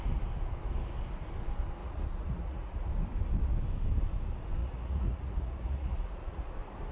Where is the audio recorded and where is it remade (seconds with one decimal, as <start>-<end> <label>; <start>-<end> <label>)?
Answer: 0.0-1.8 recorded; 1.8-2.9 remade; 2.9-4.6 recorded; 4.6-6.5 remade; 6.5-6.9 recorded